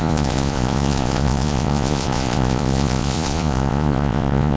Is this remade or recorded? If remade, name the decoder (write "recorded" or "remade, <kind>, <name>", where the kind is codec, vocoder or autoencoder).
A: remade, vocoder, Vocos